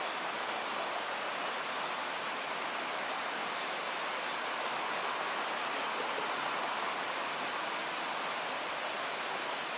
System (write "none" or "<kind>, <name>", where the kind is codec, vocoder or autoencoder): none